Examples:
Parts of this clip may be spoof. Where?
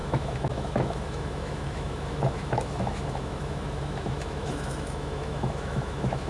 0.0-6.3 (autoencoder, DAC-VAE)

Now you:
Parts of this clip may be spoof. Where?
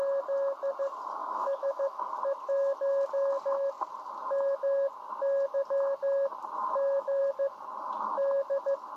1.2-2.1 (autoencoder, DAC-VAE); 6.6-7.2